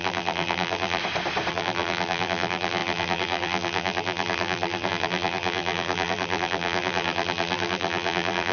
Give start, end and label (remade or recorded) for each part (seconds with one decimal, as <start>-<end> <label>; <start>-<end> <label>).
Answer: 0.0-1.0 remade; 1.0-1.5 recorded; 1.5-8.5 remade